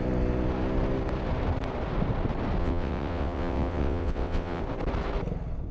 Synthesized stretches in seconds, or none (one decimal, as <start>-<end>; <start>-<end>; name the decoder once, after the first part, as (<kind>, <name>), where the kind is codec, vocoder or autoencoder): 2.6-4.6 (vocoder, WaveNeXt)